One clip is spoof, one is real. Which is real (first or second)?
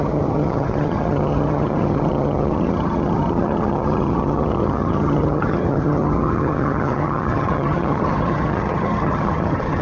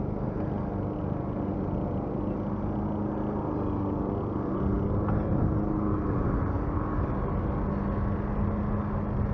second